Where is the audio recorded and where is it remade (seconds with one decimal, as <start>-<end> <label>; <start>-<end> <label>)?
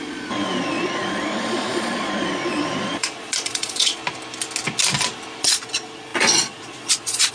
0.0-4.0 remade; 4.0-5.4 recorded; 5.4-7.3 remade